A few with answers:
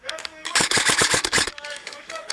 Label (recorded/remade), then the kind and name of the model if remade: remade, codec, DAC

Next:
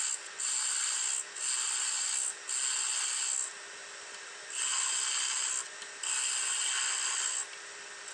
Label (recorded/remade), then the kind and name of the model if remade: recorded